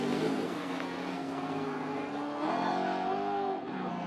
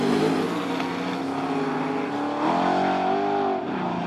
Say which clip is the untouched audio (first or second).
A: second